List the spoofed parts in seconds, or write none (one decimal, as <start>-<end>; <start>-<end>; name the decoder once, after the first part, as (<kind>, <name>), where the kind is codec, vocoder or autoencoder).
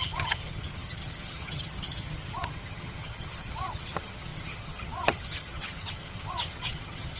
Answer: 0.0-7.2 (vocoder, HiFi-GAN)